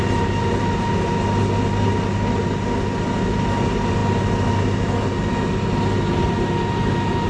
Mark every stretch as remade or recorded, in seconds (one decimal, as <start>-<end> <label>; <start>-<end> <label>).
0.0-7.3 recorded

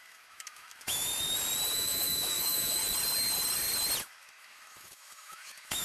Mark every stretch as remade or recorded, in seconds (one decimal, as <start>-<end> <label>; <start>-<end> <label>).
0.0-1.1 remade; 1.1-1.7 recorded; 1.7-2.8 remade; 2.8-4.0 recorded; 4.0-5.8 remade

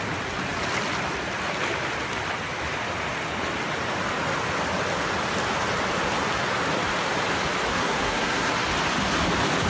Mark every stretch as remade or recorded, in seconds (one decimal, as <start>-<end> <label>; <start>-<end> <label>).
0.0-7.7 recorded; 7.7-8.5 remade; 8.5-9.7 recorded

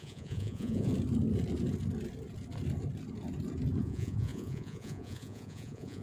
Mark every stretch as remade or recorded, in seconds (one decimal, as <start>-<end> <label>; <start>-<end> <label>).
0.0-0.9 remade; 0.9-3.8 recorded; 3.8-6.0 remade

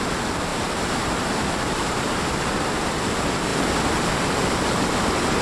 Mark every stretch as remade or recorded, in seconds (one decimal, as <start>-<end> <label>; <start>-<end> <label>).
0.0-0.5 recorded; 0.5-2.2 remade; 2.2-5.4 recorded

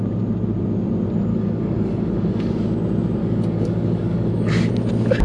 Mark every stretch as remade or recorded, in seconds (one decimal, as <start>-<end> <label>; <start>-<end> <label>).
0.0-1.3 recorded; 1.3-2.5 remade; 2.5-3.2 recorded; 3.2-4.7 remade; 4.7-5.2 recorded